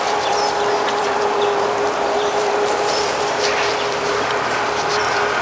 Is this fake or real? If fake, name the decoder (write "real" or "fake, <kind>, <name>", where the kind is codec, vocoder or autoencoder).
fake, vocoder, BigVGAN v2